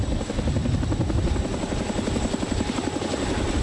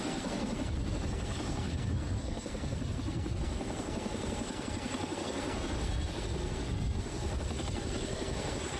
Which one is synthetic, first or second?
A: second